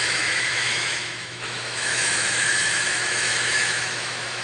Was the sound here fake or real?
fake